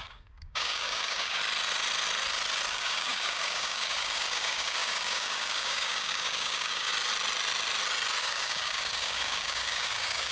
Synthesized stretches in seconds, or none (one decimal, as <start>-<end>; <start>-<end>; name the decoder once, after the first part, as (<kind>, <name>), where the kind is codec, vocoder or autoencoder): 0.0-1.4 (codec, DAC); 2.7-6.9; 8.2-10.3